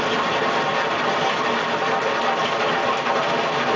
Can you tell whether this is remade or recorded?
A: recorded